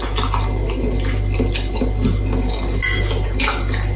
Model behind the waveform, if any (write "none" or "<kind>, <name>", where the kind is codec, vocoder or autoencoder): none